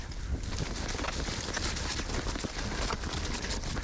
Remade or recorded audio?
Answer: recorded